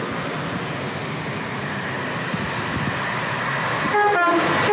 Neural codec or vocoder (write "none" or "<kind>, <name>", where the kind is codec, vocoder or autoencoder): none